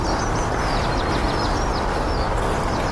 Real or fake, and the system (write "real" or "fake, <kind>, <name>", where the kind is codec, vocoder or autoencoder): fake, vocoder, BigVGAN v2